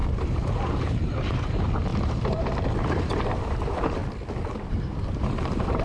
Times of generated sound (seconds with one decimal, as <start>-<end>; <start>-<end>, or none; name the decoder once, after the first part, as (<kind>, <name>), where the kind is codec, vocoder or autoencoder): 0.0-4.0 (vocoder, BigVGAN v2); 4.7-5.8